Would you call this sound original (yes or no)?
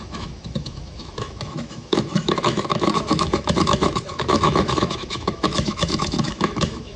no